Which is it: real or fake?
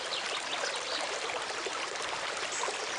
real